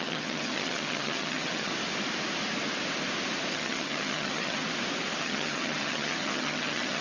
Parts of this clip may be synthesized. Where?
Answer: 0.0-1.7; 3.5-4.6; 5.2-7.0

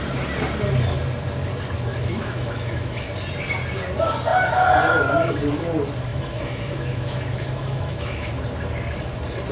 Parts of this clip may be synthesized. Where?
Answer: 1.9-3.1; 6.1-8.3